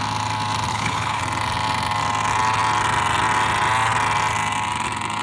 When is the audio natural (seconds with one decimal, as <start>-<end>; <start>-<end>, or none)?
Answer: 0.0-0.7; 1.2-5.2